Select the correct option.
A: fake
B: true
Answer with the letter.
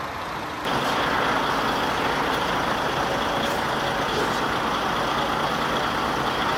B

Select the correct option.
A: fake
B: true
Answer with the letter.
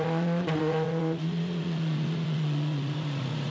A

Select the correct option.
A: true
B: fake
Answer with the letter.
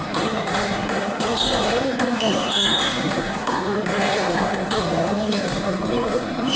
B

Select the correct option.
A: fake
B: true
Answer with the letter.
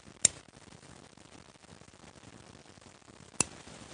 B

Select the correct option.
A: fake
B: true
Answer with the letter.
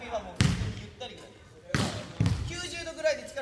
B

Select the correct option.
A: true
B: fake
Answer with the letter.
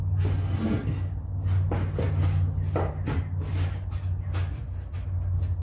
A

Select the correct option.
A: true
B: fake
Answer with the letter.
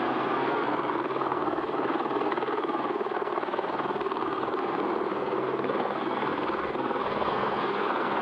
B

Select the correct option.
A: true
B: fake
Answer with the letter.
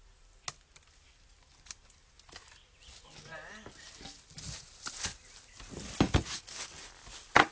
A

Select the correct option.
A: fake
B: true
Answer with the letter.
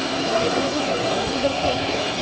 A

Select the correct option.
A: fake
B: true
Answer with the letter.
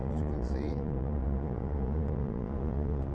A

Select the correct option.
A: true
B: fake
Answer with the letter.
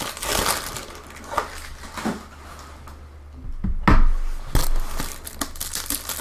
A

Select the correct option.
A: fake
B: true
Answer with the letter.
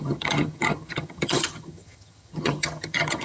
A